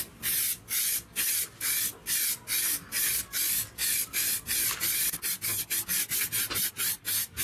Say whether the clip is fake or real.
real